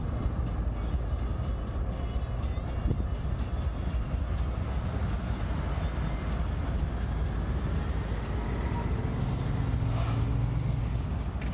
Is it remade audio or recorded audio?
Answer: recorded